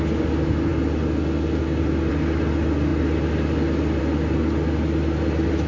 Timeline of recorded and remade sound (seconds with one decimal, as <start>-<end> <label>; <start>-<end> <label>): 0.0-5.7 recorded